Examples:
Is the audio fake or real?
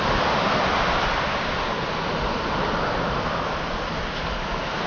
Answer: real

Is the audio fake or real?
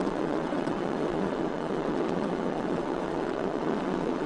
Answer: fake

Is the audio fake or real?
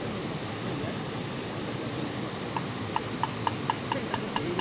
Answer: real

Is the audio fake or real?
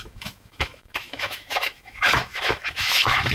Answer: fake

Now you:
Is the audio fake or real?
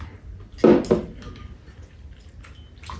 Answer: real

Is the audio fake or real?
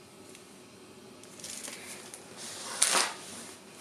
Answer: real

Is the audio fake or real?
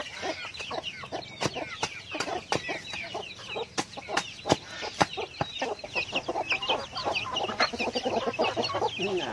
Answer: real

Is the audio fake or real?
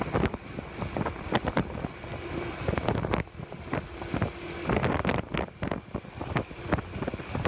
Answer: real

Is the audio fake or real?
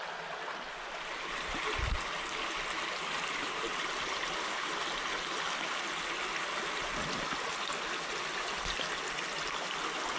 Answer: real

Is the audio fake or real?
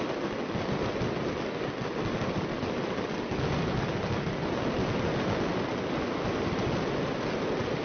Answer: real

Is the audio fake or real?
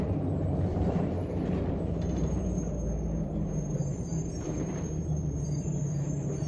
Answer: fake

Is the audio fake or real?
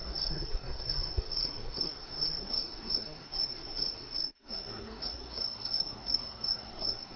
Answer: fake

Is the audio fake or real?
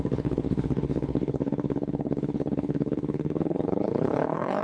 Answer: fake